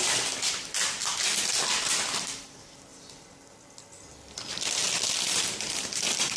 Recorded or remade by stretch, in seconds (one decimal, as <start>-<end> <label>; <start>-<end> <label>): 0.0-6.4 recorded